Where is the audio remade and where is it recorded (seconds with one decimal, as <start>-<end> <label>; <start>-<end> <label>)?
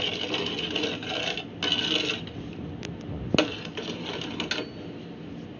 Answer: 0.0-5.6 recorded